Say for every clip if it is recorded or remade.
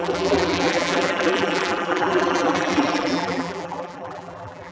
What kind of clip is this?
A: remade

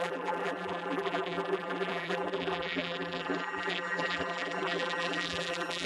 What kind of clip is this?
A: remade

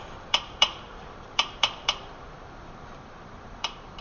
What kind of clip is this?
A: remade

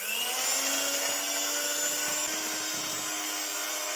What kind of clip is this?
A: recorded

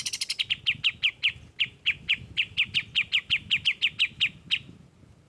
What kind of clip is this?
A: recorded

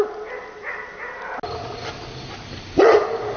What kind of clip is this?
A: recorded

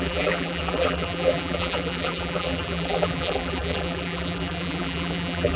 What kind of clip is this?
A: remade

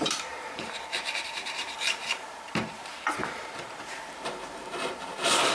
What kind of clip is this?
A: remade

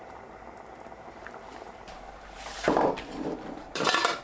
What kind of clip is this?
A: remade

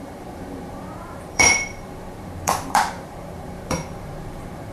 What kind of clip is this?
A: remade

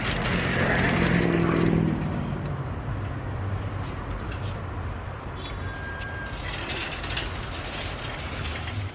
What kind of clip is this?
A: recorded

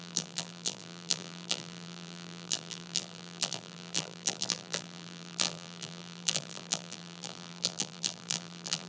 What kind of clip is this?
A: remade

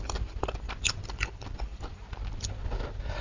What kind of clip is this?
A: remade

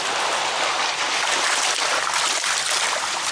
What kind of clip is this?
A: recorded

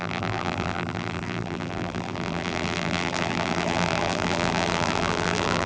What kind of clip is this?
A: remade